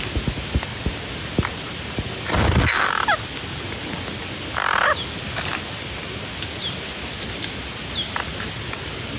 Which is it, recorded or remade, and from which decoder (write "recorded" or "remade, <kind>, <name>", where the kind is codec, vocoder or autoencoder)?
recorded